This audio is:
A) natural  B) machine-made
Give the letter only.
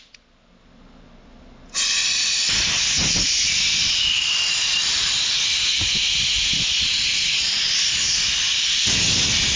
A